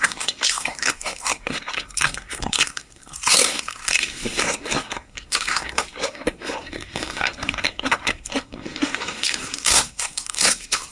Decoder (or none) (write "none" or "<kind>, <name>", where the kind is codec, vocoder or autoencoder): codec, SNAC